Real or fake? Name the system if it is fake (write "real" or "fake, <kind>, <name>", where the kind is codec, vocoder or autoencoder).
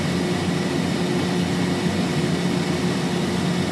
real